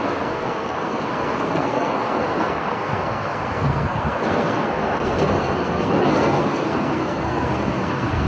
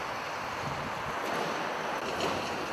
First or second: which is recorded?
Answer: second